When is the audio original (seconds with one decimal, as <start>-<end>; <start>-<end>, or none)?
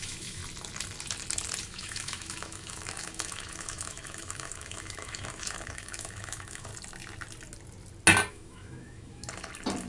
0.4-1.6; 6.7-8.3; 9.2-9.9